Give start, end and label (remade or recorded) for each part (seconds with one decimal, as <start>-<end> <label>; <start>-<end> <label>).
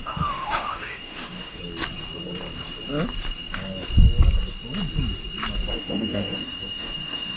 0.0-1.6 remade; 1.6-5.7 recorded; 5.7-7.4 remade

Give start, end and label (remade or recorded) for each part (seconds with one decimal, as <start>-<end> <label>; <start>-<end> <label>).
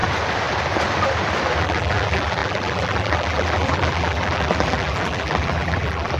0.0-1.6 recorded; 1.6-6.2 remade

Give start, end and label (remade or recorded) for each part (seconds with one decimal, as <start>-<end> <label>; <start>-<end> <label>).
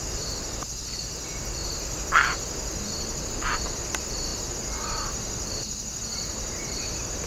0.0-7.3 recorded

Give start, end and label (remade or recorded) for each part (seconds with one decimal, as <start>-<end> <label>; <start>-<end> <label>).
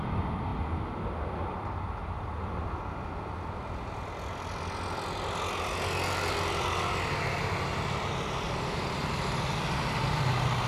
0.0-10.7 recorded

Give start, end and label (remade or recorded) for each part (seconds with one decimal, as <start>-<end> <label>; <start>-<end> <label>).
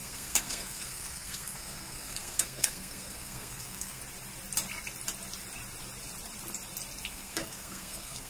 0.0-4.0 remade; 4.0-7.1 recorded; 7.1-8.3 remade